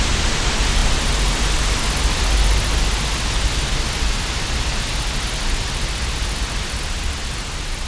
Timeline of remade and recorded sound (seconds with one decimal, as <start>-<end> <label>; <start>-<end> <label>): 0.0-7.9 recorded